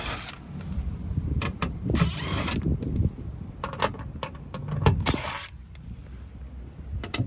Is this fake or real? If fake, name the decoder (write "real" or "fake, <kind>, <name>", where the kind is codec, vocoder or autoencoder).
fake, vocoder, BigVGAN v2